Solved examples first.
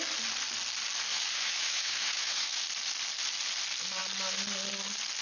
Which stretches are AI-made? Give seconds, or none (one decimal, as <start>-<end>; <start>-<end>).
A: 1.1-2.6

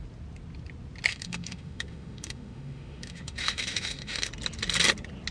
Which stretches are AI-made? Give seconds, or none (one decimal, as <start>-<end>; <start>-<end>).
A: 1.1-4.3

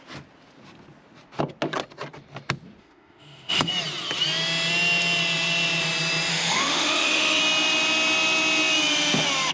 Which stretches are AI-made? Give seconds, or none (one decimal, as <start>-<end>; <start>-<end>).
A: 2.8-3.7; 6.3-7.4

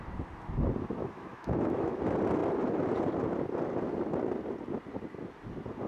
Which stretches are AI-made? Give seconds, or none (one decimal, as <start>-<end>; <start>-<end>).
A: 1.0-2.0

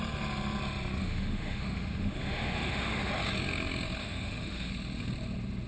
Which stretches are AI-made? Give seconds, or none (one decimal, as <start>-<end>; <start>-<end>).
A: 1.0-3.1; 4.0-4.7

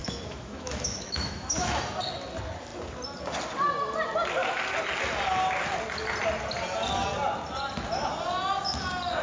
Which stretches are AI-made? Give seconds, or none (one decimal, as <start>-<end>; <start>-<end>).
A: 0.0-1.8

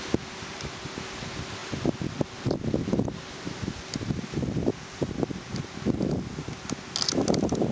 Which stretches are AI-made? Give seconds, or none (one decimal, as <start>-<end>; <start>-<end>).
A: none